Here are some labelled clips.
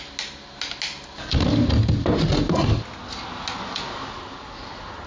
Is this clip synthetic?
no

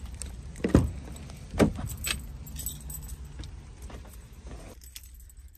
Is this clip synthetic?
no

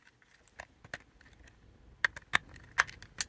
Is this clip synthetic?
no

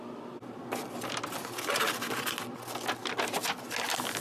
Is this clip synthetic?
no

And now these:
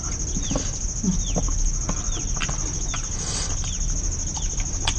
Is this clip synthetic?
no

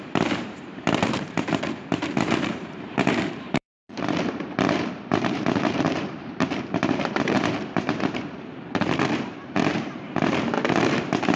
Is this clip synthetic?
yes